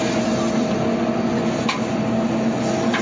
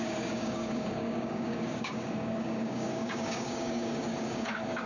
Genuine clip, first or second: first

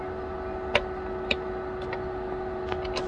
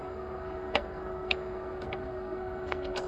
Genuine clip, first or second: first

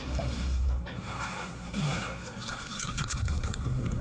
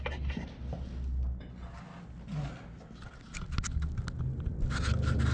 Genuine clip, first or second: second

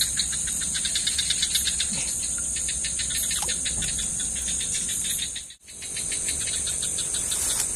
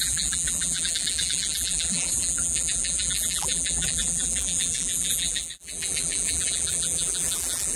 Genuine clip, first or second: first